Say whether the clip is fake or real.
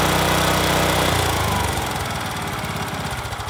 real